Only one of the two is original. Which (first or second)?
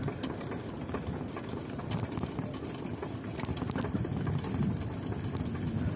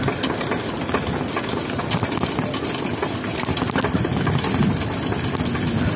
second